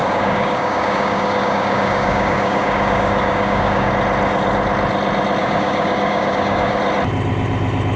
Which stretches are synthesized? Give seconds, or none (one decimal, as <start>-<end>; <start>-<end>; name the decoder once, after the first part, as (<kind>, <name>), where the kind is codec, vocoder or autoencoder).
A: 0.0-3.9 (codec, DAC); 5.4-6.8